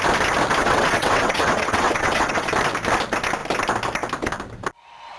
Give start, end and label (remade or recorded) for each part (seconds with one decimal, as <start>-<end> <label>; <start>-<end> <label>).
0.0-0.6 recorded; 0.6-2.5 remade; 2.5-5.2 recorded